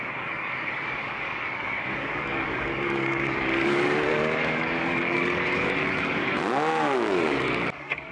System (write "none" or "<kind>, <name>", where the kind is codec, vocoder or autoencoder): codec, DAC